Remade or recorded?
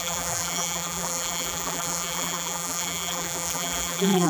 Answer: remade